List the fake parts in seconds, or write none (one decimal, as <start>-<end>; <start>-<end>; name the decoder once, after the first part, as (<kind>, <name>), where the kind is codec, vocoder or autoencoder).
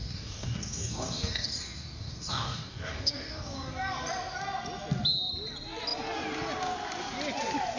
0.0-3.7 (codec, DAC)